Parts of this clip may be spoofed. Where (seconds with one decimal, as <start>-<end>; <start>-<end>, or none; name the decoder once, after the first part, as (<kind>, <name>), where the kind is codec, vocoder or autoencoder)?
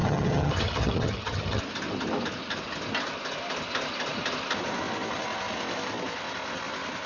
0.0-1.6 (vocoder, HiFi-GAN)